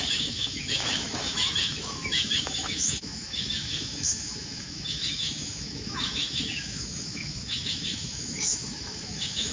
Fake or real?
fake